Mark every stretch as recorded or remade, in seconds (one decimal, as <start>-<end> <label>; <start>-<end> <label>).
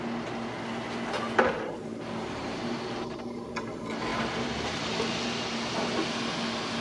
0.0-2.4 recorded; 2.4-3.5 remade; 3.5-4.1 recorded; 4.1-4.8 remade; 4.8-6.8 recorded